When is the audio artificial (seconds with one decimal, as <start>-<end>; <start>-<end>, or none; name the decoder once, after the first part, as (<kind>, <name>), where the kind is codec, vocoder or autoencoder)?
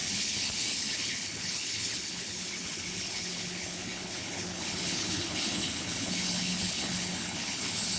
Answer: 0.0-8.0 (codec, HILCodec)